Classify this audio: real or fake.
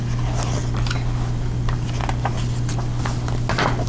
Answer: real